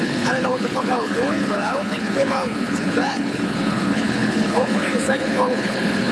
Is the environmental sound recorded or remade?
remade